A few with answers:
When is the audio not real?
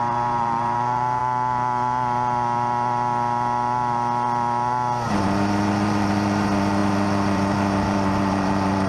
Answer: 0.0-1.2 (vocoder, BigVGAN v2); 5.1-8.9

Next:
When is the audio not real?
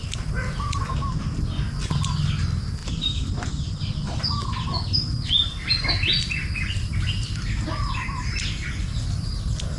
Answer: none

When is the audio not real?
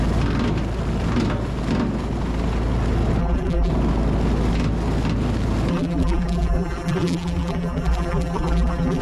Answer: 3.2-3.7 (vocoder, BigVGAN v2); 5.7-9.0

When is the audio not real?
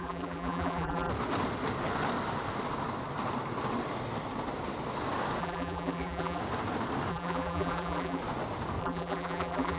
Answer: 0.0-1.1 (vocoder, BigVGAN v2); 5.4-6.4; 7.1-8.2; 8.8-9.8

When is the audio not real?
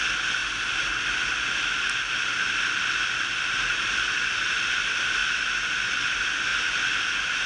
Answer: none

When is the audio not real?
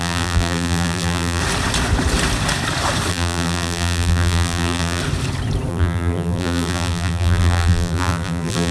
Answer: 0.0-1.4 (vocoder, BigVGAN v2); 3.1-5.0; 5.7-8.7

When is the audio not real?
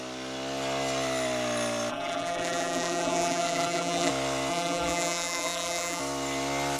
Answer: 1.9-4.1 (vocoder, BigVGAN v2); 4.5-6.0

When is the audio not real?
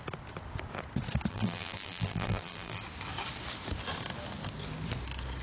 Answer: 1.3-2.8 (vocoder, BigVGAN v2)